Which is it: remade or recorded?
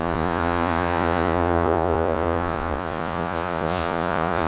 remade